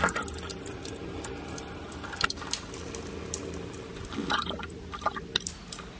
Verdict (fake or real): real